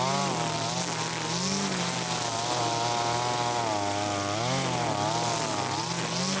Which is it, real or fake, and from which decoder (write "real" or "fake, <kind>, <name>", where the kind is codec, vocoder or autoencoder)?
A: real